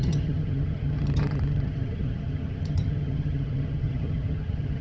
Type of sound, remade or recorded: remade